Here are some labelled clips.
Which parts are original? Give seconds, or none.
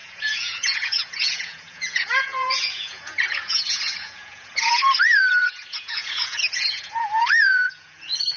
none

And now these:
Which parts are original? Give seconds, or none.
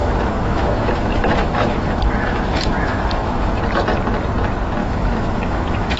3.6-4.8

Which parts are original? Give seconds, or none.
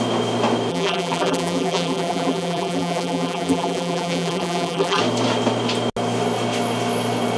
0.0-0.7; 5.0-7.4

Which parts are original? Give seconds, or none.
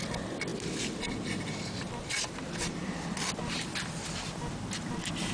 2.8-4.8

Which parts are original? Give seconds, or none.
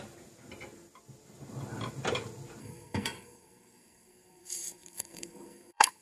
0.0-2.6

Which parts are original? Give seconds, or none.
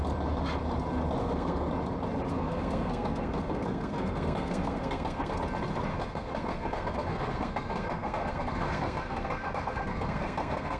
0.0-1.2; 1.7-2.3; 5.3-5.9